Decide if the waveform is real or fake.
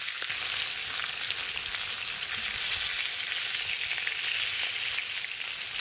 real